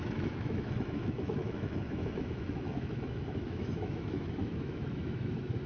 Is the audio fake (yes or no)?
yes